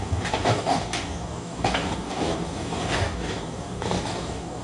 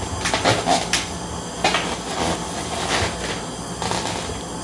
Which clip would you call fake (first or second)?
first